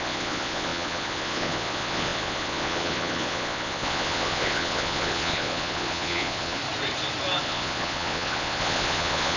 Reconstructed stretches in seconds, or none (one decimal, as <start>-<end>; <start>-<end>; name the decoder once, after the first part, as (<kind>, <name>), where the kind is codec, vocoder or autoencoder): 0.0-6.6 (vocoder, Vocos); 7.4-9.4